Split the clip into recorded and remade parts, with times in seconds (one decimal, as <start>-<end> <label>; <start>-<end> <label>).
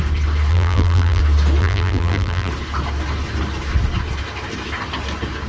0.0-0.5 recorded; 0.5-1.2 remade; 1.2-1.6 recorded; 1.6-2.5 remade; 2.5-5.5 recorded